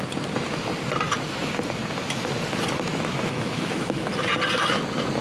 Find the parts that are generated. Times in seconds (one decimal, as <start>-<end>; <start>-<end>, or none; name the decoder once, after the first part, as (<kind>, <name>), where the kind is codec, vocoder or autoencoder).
2.9-4.1 (autoencoder, DAC-VAE)